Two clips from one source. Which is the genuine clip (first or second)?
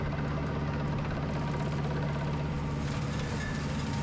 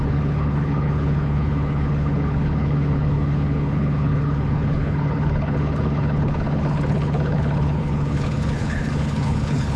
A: first